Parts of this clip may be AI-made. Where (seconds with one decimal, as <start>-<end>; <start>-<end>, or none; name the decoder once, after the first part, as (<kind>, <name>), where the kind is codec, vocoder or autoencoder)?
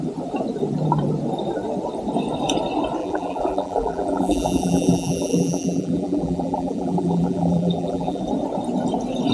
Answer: 3.0-8.2 (vocoder, BigVGAN v2)